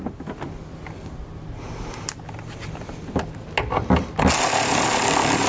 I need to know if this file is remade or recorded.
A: recorded